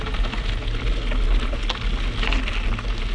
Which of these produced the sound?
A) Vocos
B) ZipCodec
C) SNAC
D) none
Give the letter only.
D